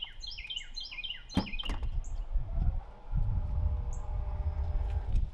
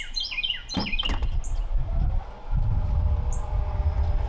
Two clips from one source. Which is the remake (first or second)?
second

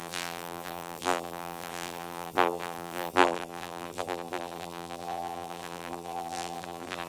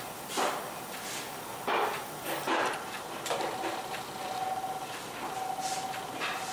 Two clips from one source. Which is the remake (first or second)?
first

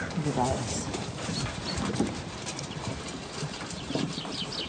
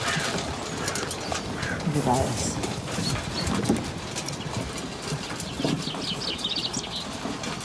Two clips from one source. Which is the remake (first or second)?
first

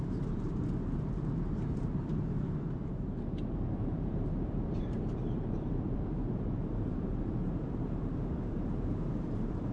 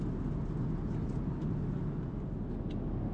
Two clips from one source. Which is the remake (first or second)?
first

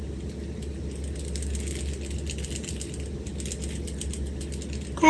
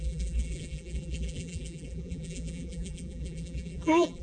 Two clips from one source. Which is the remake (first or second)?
second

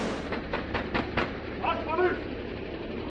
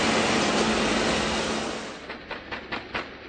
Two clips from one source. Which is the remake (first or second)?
first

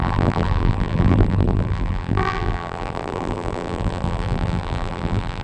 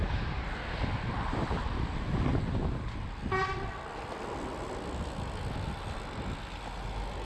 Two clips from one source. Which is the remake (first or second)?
first